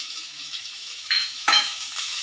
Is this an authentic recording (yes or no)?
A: no